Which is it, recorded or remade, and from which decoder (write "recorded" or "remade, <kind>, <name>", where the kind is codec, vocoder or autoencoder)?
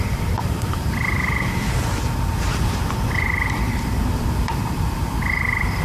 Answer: remade, vocoder, BigVGAN v2